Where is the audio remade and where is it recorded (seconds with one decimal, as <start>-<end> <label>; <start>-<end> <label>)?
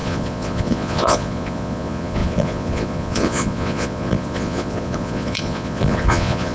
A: 0.0-6.5 remade